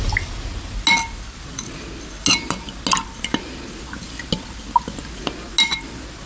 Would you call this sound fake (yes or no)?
no